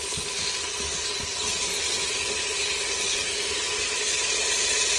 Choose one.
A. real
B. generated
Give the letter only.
A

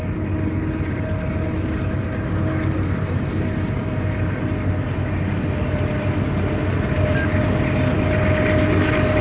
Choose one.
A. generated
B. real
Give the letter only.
B